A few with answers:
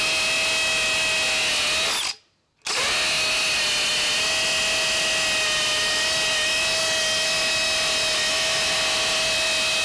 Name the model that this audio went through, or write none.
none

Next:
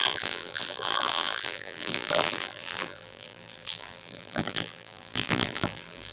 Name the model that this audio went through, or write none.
vocoder, BigVGAN v2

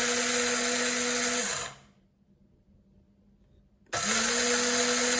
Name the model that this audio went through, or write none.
none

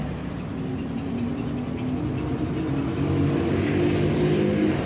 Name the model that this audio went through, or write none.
none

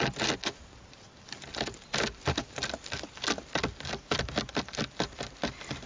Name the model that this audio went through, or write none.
none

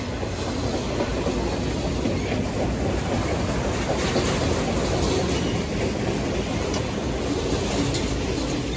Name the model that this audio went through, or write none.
none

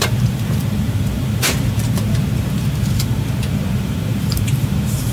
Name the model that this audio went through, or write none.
vocoder, BigVGAN v2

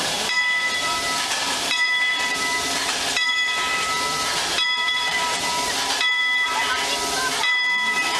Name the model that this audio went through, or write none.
vocoder, BigVGAN v2